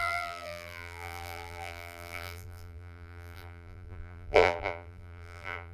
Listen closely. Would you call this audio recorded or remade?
remade